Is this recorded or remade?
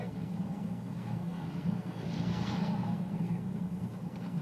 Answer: remade